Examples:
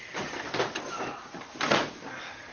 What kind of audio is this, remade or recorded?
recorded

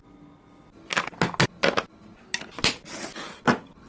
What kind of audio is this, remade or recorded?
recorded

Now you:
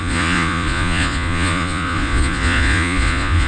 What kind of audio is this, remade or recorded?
remade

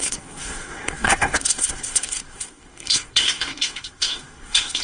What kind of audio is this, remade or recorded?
remade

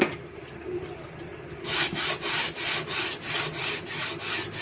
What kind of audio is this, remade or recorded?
recorded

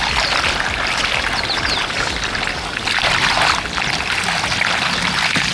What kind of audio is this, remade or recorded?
recorded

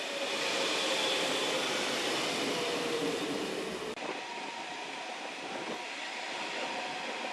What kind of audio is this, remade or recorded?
recorded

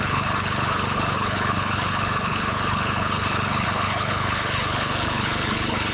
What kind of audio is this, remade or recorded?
remade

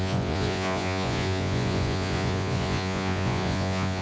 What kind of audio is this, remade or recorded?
remade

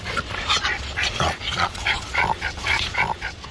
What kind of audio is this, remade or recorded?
remade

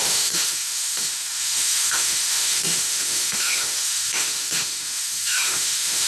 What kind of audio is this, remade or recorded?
remade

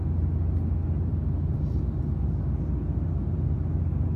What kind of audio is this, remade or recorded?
recorded